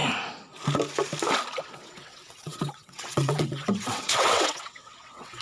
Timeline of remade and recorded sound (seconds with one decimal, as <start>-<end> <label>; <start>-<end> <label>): 0.0-1.6 recorded; 1.6-5.4 remade